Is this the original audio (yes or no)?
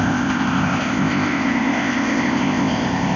no